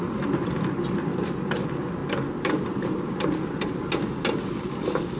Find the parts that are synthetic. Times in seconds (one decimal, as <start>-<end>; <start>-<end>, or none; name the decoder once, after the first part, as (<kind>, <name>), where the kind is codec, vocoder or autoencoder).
none